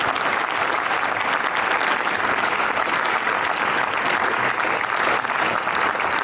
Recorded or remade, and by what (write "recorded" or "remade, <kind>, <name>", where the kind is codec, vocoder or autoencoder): recorded